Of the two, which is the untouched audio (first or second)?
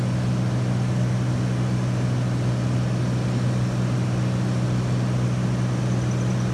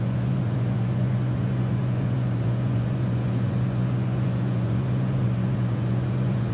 first